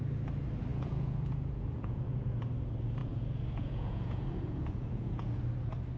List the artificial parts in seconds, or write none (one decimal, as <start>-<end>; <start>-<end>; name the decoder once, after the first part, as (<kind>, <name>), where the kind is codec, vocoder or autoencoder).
0.7-2.4 (vocoder, Vocos); 3.0-5.4